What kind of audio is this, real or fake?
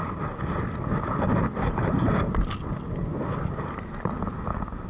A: real